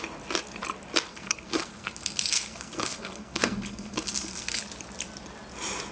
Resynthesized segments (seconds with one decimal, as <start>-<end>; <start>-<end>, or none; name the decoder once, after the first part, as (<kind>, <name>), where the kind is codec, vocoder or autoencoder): 1.1-4.6 (codec, SNAC)